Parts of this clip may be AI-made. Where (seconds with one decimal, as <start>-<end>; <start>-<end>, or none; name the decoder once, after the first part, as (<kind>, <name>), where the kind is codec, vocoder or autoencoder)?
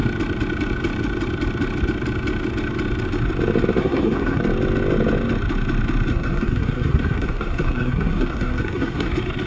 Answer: 3.8-4.4 (codec, SNAC); 6.1-9.1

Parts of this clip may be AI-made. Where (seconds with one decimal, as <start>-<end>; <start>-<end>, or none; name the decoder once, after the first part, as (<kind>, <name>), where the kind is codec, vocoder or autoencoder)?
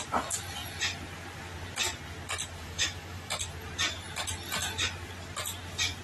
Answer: 2.6-3.3 (autoencoder, DAC-VAE)